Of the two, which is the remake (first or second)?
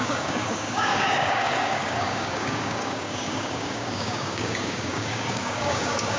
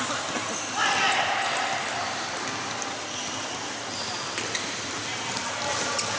first